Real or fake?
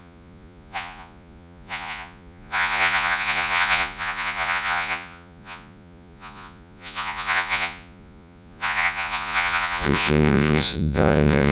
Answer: fake